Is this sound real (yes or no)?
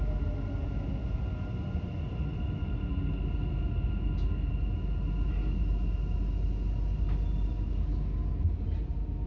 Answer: yes